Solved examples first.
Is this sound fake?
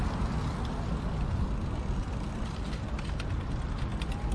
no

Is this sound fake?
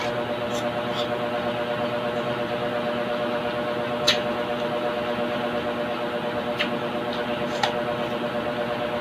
no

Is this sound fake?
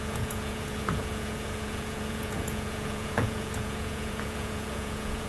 yes